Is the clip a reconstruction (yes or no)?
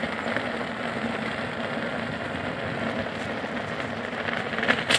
no